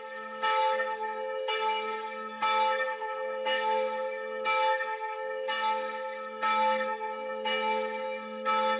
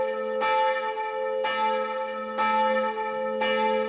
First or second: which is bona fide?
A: second